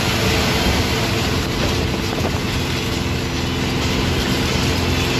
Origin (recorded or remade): recorded